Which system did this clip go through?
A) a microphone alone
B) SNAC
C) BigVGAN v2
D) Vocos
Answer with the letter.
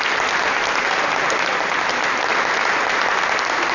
A